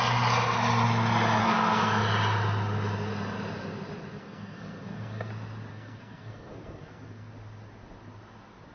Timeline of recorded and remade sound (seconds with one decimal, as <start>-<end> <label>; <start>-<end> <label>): 0.0-1.4 recorded; 1.4-2.0 remade; 2.0-4.2 recorded; 4.2-5.3 remade; 5.3-5.7 recorded; 5.7-7.3 remade; 7.3-8.7 recorded